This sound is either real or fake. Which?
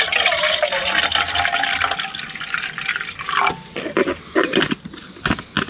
real